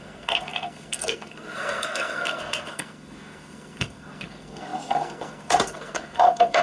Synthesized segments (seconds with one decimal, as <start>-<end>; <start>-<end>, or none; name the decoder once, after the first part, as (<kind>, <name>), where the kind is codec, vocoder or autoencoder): 0.0-6.6 (codec, SNAC)